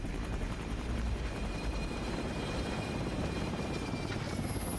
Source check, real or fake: fake